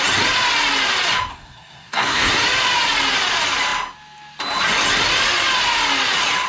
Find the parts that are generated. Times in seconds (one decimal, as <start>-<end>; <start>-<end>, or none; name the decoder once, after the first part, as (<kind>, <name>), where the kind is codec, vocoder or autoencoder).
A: 1.3-2.3 (codec, SNAC)